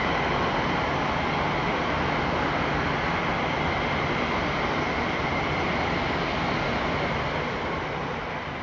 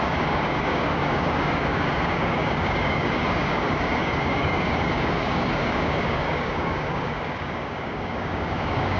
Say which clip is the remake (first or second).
second